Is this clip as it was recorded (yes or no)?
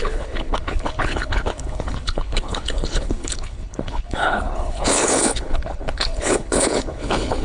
no